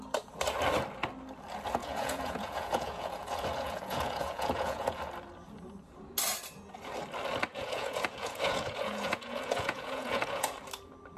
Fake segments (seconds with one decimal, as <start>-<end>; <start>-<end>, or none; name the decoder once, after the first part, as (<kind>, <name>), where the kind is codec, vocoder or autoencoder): 1.8-5.0 (vocoder, Vocos); 7.5-10.5